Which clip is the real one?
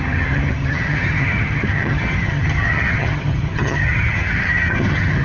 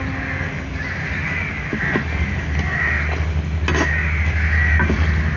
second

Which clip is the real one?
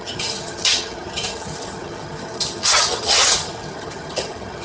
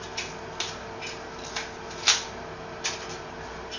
second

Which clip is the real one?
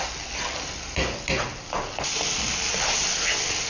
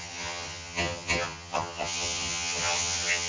first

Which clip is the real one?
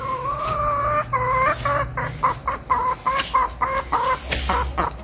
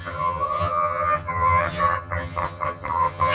first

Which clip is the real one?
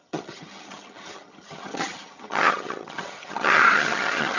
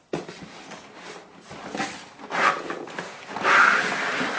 second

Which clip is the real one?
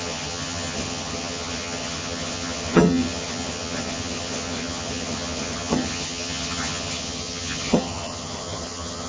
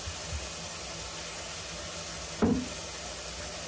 second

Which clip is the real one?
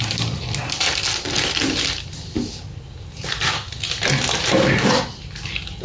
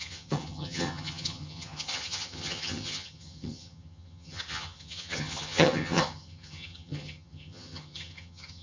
first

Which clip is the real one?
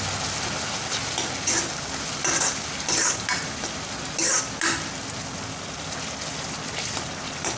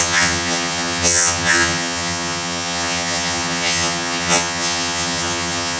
first